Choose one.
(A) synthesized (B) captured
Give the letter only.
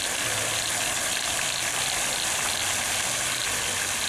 B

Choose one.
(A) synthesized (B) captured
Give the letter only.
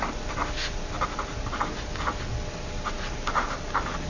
B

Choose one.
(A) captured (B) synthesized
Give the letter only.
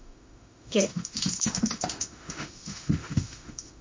B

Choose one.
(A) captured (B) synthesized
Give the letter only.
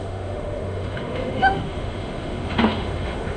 B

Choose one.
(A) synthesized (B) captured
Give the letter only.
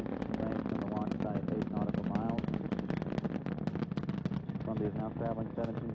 B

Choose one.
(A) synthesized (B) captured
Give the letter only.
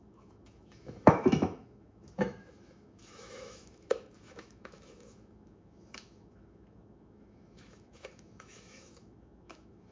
A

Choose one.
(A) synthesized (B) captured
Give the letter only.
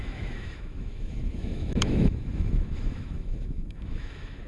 A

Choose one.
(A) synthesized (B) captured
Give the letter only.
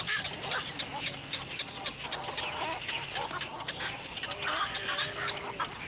B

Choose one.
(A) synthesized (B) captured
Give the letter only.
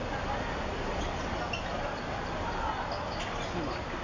B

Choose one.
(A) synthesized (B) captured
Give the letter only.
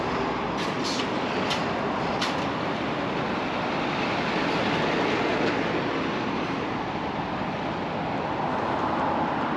B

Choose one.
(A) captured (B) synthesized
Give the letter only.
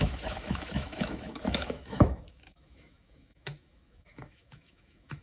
B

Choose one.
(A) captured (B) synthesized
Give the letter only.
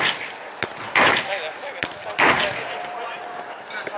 A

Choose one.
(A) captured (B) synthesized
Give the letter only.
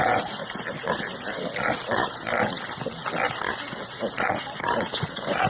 A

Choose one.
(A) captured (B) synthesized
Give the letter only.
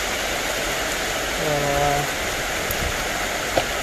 A